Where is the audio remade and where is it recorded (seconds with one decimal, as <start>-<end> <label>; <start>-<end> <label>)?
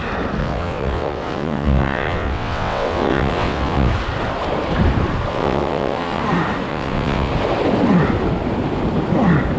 0.0-0.4 recorded; 0.4-3.9 remade; 3.9-5.3 recorded; 5.3-6.2 remade; 6.2-6.7 recorded; 6.7-7.3 remade; 7.3-9.6 recorded